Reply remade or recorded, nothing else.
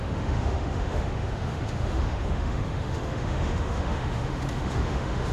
remade